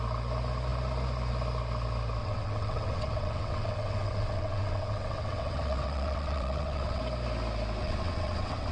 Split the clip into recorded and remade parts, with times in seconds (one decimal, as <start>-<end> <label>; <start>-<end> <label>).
0.0-2.2 recorded; 2.2-7.0 remade; 7.0-7.8 recorded; 7.8-8.7 remade

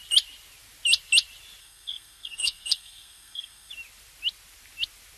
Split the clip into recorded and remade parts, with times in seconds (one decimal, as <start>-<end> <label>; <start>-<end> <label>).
0.0-1.6 recorded; 1.6-3.7 remade; 3.7-5.2 recorded

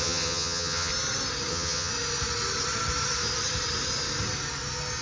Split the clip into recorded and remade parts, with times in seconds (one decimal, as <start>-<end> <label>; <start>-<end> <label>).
0.0-0.9 remade; 0.9-1.5 recorded; 1.5-1.9 remade; 1.9-5.0 recorded

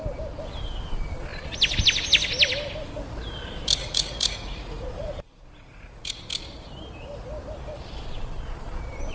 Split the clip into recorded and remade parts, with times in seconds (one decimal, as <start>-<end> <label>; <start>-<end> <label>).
0.0-3.8 recorded; 3.8-6.2 remade; 6.2-9.1 recorded

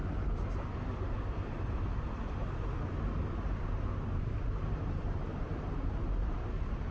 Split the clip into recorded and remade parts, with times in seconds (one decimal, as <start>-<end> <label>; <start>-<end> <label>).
0.0-4.1 recorded; 4.1-6.9 remade

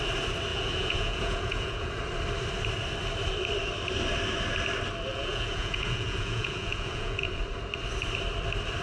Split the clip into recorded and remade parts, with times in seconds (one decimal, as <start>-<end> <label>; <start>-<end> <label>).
0.0-0.5 recorded; 0.5-1.9 remade; 1.9-5.1 recorded; 5.1-7.4 remade; 7.4-8.8 recorded

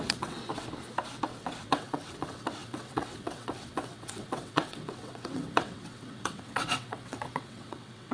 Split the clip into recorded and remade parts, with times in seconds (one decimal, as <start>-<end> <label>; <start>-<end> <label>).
0.0-0.4 remade; 0.4-1.4 recorded; 1.4-8.1 remade

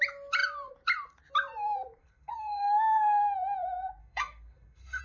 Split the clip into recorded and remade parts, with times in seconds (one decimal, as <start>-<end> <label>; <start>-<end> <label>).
0.0-2.0 recorded; 2.0-3.2 remade; 3.2-4.0 recorded; 4.0-5.0 remade